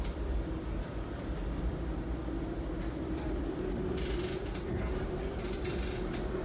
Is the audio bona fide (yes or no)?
yes